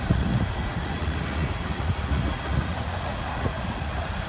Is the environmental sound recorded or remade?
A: remade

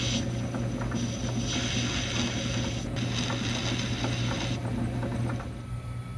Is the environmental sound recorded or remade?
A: recorded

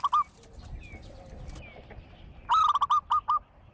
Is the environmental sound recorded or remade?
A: recorded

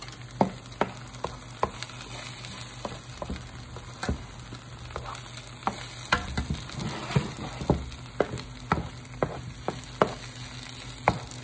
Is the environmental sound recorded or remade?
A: recorded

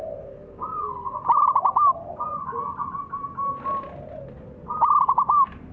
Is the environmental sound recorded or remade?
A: recorded